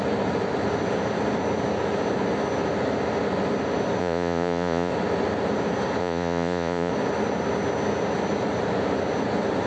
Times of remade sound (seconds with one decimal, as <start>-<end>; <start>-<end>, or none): 4.0-4.9; 6.0-6.9